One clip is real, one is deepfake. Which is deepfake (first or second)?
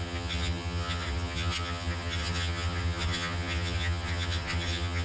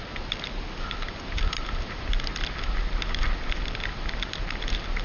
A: first